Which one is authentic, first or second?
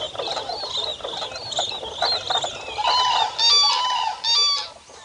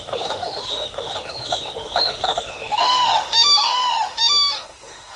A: first